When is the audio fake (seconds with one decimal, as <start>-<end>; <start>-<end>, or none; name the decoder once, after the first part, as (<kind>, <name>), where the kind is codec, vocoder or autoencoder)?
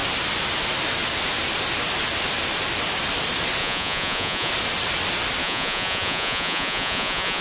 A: 3.6-4.5 (vocoder, Vocos); 5.4-7.4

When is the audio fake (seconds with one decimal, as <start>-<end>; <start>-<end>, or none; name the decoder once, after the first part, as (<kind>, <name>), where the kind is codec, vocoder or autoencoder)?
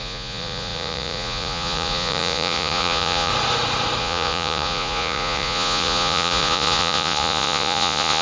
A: 0.0-3.3 (vocoder, Vocos); 4.0-8.2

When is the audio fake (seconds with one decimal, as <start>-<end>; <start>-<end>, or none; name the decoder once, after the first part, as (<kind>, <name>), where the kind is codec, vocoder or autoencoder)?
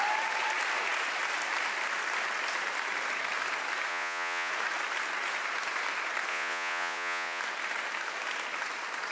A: 3.9-4.5 (vocoder, Vocos); 6.3-7.4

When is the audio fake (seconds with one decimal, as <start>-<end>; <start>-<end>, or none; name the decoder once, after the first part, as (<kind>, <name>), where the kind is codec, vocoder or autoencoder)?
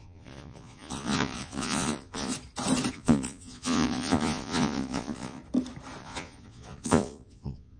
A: 0.0-2.3 (vocoder, Vocos); 2.9-5.4; 6.0-7.8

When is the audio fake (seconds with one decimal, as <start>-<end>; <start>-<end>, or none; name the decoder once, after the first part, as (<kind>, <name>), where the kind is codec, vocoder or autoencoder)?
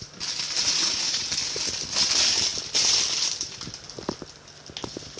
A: 0.6-1.3 (vocoder, Vocos)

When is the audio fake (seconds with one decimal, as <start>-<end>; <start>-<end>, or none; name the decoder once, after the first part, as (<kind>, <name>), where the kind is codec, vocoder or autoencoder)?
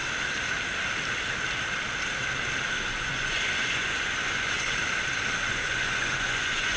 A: 3.0-4.8 (vocoder, Vocos); 5.5-6.8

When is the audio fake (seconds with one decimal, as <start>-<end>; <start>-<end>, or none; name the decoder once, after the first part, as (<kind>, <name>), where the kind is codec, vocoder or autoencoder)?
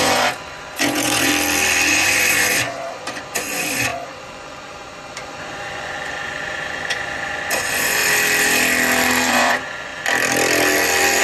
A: 0.0-1.3 (vocoder, Vocos); 1.9-8.0; 9.3-9.9